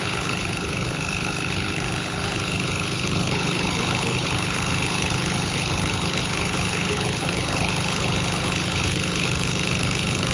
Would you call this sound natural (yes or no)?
no